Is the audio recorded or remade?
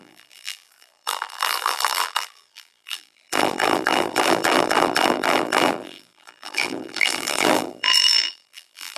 remade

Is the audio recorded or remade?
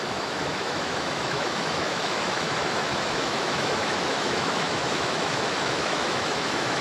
remade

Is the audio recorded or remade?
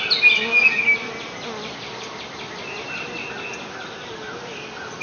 recorded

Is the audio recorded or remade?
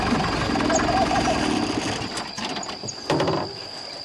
recorded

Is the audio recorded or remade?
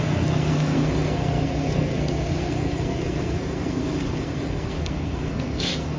remade